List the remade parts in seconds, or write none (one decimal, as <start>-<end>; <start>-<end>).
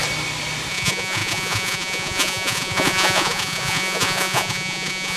0.7-5.2